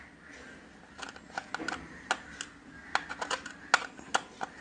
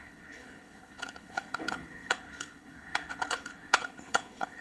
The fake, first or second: second